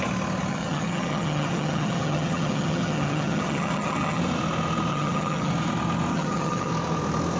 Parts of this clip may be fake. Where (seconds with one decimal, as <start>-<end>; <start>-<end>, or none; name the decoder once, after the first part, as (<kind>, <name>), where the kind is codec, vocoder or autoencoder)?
0.5-4.2 (vocoder, HiFi-GAN); 4.9-5.5; 6.1-6.7

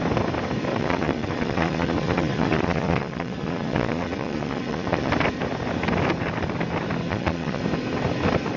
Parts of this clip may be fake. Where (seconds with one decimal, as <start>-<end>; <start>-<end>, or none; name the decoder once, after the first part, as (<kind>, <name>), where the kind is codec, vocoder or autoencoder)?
0.7-5.1 (vocoder, Vocos); 7.1-7.6

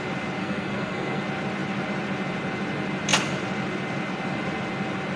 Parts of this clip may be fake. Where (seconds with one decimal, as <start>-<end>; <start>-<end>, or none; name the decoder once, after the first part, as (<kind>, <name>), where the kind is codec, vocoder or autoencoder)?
0.4-1.2 (codec, SNAC)

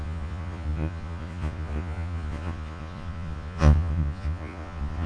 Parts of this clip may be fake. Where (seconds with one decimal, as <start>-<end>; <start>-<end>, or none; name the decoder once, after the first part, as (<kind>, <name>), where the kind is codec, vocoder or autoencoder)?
0.0-5.1 (vocoder, Vocos)